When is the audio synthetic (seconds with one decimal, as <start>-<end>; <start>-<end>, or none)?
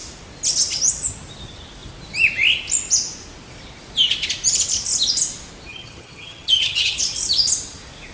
5.7-7.0